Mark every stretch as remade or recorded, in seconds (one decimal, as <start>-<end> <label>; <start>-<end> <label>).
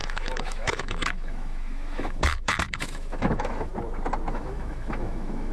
0.0-3.7 remade; 3.7-4.3 recorded; 4.3-5.5 remade